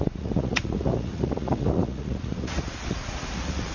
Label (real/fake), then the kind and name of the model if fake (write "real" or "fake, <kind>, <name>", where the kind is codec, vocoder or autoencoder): fake, vocoder, Vocos